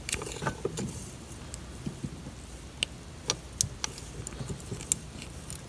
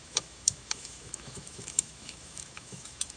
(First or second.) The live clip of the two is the first